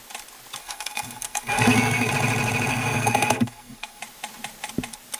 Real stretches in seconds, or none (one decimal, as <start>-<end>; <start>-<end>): 0.0-0.6; 2.1-2.7; 4.0-5.2